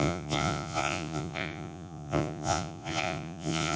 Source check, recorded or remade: remade